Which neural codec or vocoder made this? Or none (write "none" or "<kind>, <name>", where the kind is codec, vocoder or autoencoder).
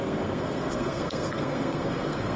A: codec, SNAC